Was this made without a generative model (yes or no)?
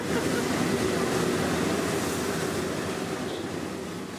yes